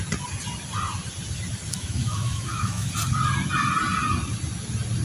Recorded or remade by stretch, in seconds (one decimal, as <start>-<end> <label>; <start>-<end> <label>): 0.0-1.7 recorded; 1.7-2.9 remade; 2.9-5.0 recorded